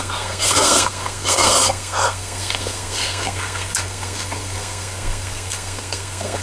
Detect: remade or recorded remade